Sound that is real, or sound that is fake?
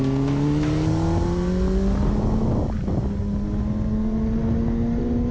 real